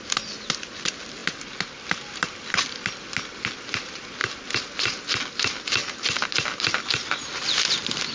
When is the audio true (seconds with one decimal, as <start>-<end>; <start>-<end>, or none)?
0.0-8.1